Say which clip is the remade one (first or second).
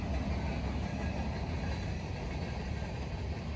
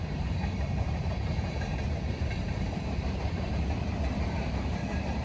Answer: second